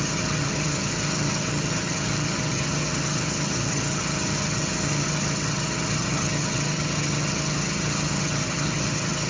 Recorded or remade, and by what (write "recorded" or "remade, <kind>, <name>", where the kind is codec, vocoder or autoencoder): remade, vocoder, HiFi-GAN